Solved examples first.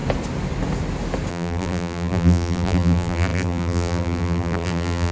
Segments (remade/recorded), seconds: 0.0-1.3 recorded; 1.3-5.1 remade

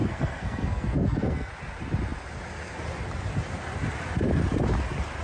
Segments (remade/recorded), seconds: 0.0-1.5 remade; 1.5-5.2 recorded

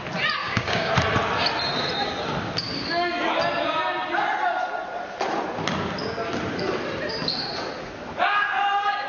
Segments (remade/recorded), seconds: 0.0-0.4 recorded; 0.4-0.9 remade; 0.9-9.1 recorded

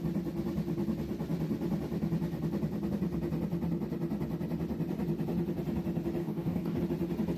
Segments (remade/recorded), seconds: 0.0-6.2 recorded; 6.2-6.8 remade; 6.8-7.4 recorded

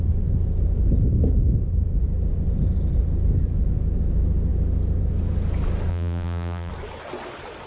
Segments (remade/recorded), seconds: 0.0-5.9 recorded; 5.9-6.7 remade; 6.7-7.7 recorded

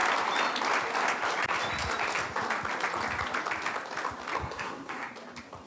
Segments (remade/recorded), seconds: 0.0-4.4 recorded; 4.4-5.1 remade; 5.1-5.7 recorded

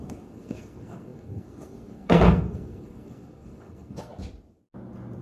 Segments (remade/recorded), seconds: 0.0-4.1 remade; 4.1-5.2 recorded